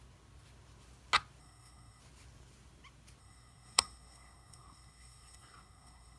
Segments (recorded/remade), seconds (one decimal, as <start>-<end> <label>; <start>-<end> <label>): 0.0-1.4 recorded; 1.4-2.0 remade; 2.0-3.2 recorded; 3.2-6.2 remade